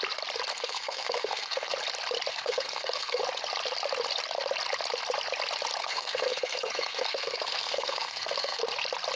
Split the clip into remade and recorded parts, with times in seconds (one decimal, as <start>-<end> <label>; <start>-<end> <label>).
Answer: 0.0-0.5 recorded; 0.5-1.7 remade; 1.7-2.3 recorded; 2.3-3.2 remade; 3.2-5.8 recorded; 5.8-8.6 remade; 8.6-9.2 recorded

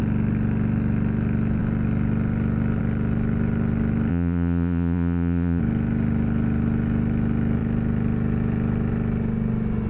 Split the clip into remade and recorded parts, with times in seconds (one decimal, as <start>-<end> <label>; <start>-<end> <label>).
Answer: 0.0-4.1 recorded; 4.1-5.6 remade; 5.6-9.9 recorded

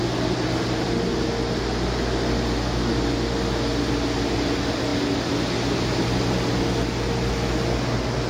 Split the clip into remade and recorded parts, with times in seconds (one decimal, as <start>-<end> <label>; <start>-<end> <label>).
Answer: 0.0-8.3 recorded